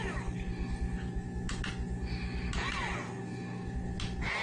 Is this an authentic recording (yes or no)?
yes